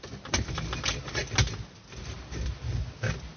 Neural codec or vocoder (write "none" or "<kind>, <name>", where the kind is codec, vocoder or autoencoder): none